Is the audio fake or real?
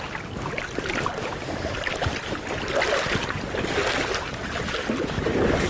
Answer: real